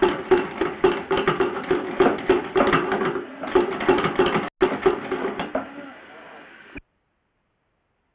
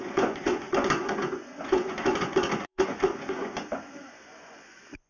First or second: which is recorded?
first